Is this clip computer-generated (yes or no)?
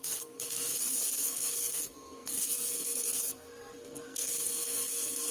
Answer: yes